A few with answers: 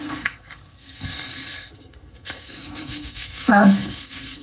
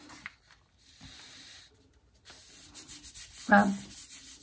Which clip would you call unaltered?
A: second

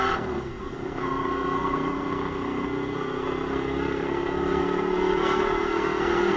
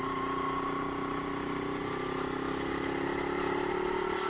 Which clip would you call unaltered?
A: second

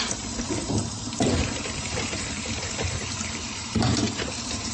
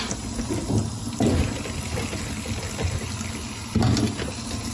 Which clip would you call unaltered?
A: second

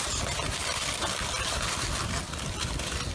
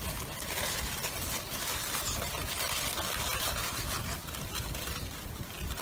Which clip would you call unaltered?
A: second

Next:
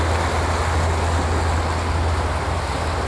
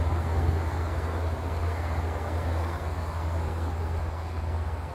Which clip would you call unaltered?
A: first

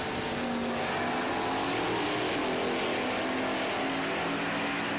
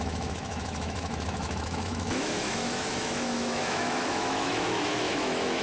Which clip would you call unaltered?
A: first